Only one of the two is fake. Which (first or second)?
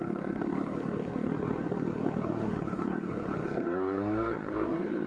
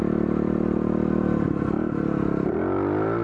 first